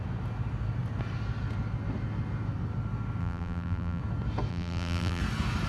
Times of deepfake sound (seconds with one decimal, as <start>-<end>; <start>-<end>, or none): 3.2-4.0; 4.5-5.2